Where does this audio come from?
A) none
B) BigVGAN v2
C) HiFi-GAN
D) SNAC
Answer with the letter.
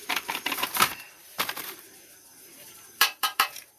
B